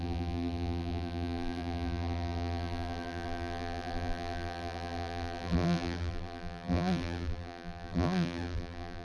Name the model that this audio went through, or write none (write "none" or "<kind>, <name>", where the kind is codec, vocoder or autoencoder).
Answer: vocoder, BigVGAN v2